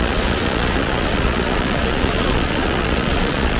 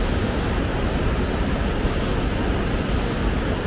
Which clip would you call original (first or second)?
second